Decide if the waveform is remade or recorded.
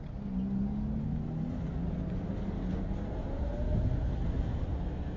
recorded